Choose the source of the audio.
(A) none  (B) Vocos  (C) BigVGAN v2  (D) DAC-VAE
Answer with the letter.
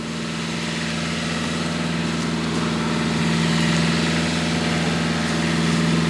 A